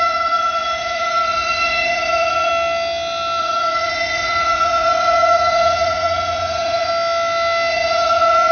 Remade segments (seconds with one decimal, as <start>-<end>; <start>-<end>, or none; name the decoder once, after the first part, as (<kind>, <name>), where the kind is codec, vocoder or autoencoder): 0.0-2.5 (vocoder, Vocos); 3.4-6.9; 7.7-8.5